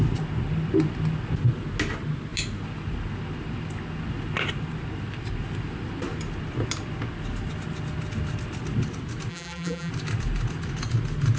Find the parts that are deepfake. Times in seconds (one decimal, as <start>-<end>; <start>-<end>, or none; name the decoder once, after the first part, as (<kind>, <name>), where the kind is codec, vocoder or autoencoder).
9.3-9.9 (vocoder, BigVGAN v2)